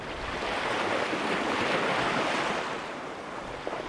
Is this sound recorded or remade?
recorded